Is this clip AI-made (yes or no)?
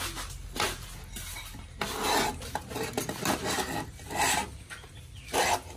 no